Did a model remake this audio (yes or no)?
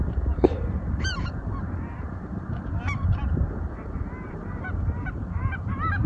yes